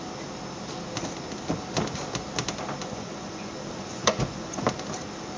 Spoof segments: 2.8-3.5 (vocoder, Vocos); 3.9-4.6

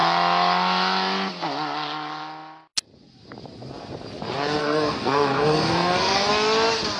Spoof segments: 4.6-6.3 (codec, SNAC)

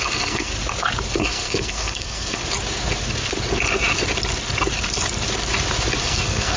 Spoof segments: 0.0-0.5 (codec, SNAC); 1.1-2.4; 6.0-6.6